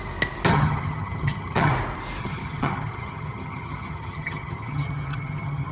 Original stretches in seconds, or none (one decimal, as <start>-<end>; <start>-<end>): 0.0-0.5; 1.7-2.2